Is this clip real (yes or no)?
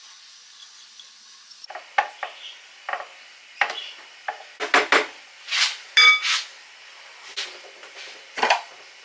yes